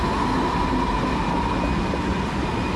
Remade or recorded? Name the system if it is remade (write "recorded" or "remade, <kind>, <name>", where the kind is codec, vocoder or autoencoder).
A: recorded